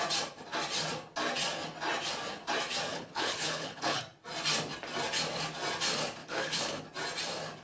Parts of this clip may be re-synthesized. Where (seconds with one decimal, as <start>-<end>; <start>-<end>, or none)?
2.9-4.0; 6.2-6.8